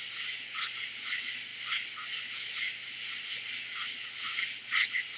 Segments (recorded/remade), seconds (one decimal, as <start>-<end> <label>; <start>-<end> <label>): 0.0-5.2 recorded